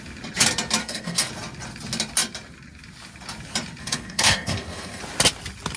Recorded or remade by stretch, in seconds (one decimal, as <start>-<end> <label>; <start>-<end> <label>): 0.0-0.8 recorded; 0.8-1.3 remade; 1.3-3.8 recorded; 3.8-5.0 remade; 5.0-5.8 recorded